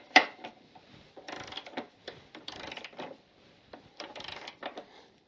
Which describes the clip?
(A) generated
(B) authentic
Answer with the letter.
A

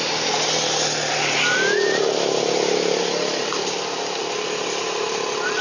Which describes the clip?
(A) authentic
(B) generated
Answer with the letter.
A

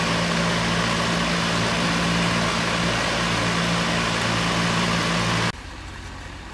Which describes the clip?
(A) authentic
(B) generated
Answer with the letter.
A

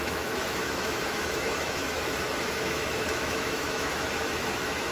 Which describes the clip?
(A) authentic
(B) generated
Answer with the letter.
B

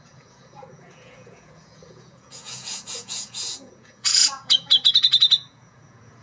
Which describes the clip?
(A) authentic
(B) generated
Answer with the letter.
B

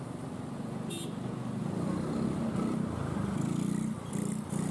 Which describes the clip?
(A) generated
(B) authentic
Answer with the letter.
B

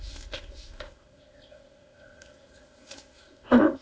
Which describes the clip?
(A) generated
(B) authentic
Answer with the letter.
A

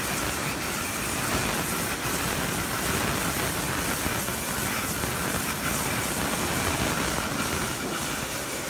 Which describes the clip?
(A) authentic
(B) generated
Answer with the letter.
A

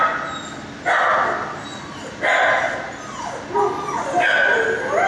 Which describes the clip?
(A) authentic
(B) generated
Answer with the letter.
A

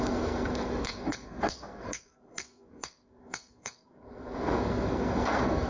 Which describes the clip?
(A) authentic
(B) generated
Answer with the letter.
B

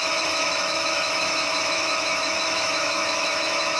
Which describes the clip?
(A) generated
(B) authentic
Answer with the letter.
A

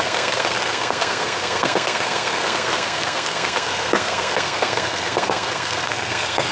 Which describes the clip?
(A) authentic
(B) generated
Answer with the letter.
B